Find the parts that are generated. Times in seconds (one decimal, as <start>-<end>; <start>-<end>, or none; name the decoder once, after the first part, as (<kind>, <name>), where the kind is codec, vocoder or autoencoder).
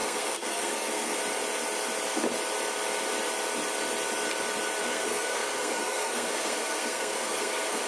0.0-1.2 (codec, SNAC); 4.8-7.9